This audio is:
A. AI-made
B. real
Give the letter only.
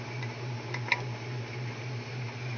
B